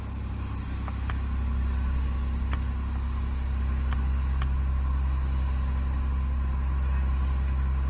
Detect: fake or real real